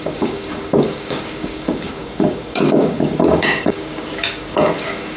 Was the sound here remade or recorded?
remade